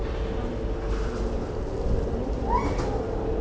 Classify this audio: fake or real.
real